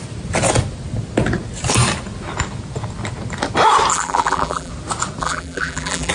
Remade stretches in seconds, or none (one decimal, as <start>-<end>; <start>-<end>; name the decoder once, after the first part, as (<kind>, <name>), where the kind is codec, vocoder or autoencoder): 3.9-4.7 (vocoder, BigVGAN v2); 5.2-6.1